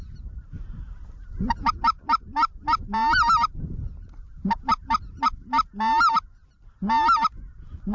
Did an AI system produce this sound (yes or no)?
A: no